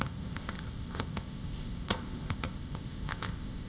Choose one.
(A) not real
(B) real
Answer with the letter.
A